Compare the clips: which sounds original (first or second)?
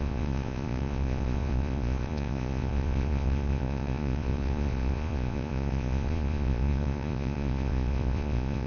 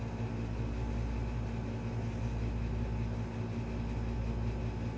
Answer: second